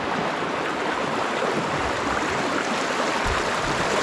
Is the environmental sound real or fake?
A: fake